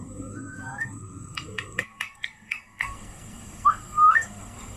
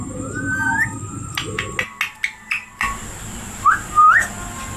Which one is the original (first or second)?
second